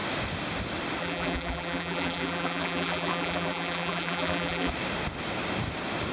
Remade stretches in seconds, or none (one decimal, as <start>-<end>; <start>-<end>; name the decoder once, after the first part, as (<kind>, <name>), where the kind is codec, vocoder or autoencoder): 1.0-4.7 (vocoder, BigVGAN v2)